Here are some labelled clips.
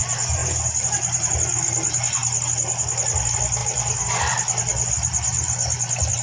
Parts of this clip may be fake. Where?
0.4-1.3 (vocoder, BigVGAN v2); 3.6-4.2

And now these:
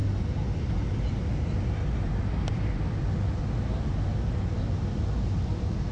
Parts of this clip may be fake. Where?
none